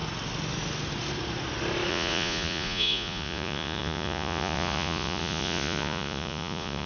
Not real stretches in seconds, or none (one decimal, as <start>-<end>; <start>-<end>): 1.9-6.9

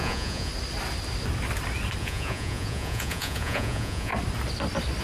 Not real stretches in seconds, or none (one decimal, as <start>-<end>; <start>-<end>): 0.0-0.5; 2.0-4.1

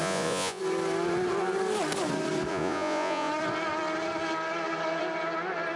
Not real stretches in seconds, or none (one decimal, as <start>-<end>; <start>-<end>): 0.0-0.6; 2.5-3.3

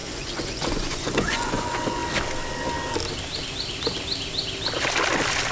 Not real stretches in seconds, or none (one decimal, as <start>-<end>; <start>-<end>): 0.0-2.0

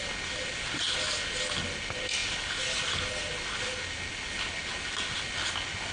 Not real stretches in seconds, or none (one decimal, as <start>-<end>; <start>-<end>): none

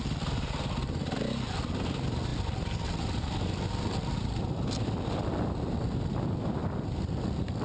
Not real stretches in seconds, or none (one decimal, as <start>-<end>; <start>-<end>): none